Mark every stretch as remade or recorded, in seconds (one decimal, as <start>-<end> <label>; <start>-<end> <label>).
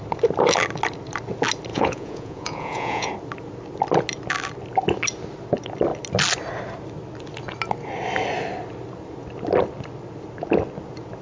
0.0-1.7 recorded; 1.7-3.1 remade; 3.1-11.2 recorded